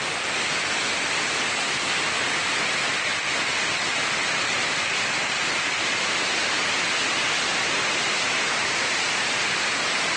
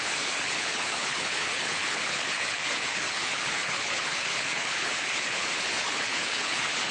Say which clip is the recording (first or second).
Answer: first